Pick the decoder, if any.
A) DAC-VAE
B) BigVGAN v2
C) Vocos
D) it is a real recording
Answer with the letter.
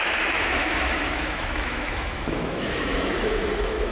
A